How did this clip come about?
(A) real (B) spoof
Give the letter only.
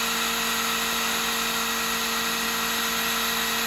A